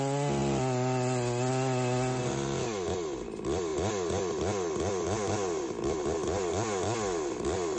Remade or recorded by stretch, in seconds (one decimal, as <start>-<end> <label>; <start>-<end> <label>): 0.0-7.8 recorded